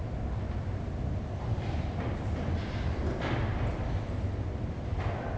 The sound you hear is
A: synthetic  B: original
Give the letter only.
B